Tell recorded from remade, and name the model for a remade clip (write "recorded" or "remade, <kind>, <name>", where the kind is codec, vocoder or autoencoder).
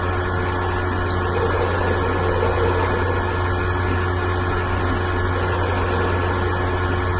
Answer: recorded